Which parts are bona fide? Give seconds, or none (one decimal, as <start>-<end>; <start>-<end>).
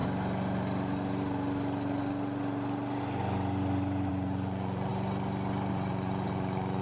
0.0-4.1; 4.9-5.7